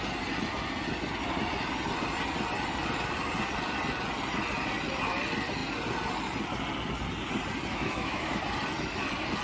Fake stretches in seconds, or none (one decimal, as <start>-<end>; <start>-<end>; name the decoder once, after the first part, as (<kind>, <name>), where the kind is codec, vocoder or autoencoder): 7.7-8.4 (autoencoder, DAC-VAE)